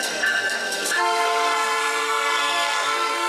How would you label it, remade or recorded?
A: remade